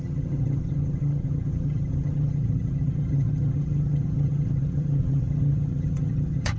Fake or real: fake